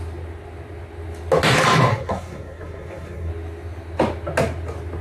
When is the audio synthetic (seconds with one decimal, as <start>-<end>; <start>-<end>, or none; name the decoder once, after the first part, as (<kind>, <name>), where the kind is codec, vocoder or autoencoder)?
1.9-3.3 (codec, SNAC)